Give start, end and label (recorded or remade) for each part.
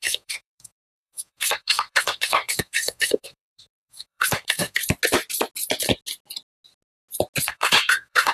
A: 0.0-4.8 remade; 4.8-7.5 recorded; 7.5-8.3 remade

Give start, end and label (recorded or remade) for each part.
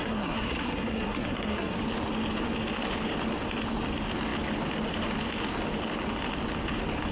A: 0.0-1.8 remade; 1.8-7.1 recorded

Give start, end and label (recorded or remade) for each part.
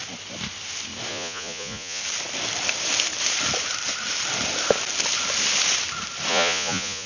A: 0.0-1.1 recorded; 1.1-2.0 remade; 2.0-6.3 recorded; 6.3-7.1 remade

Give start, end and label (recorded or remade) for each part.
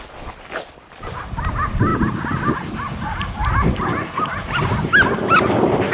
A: 0.0-5.9 recorded